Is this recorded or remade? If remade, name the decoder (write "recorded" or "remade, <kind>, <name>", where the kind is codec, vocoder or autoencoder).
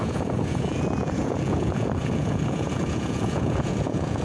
remade, vocoder, Vocos